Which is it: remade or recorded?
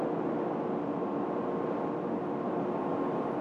recorded